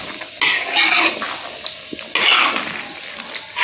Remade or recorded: recorded